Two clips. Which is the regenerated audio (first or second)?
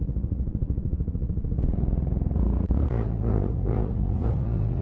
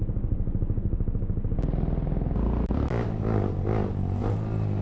first